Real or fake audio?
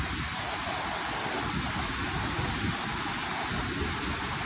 real